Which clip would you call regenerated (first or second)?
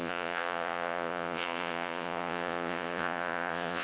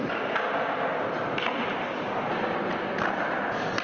first